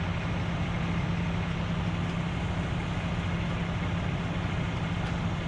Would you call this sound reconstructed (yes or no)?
no